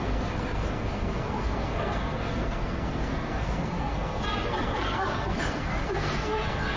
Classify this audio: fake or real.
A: fake